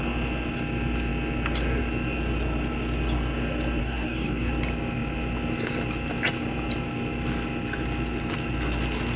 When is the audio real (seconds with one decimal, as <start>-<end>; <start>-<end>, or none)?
0.0-3.8; 4.5-9.2